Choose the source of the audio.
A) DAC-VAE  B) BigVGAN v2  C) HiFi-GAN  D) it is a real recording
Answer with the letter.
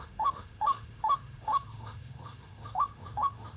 A